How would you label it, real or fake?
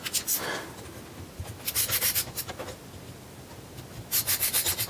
real